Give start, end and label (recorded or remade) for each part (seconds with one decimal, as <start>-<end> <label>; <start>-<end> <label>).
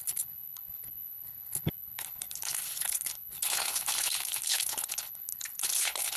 0.0-6.2 remade